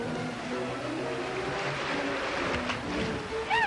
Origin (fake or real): real